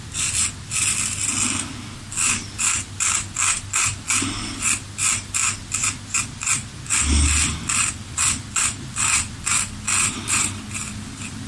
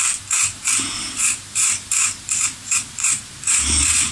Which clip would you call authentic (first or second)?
first